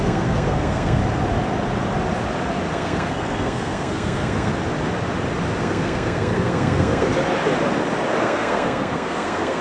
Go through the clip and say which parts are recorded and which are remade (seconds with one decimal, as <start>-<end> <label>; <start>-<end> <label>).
0.0-1.0 remade; 1.0-2.7 recorded; 2.7-4.5 remade; 4.5-5.6 recorded; 5.6-7.1 remade; 7.1-8.2 recorded; 8.2-9.6 remade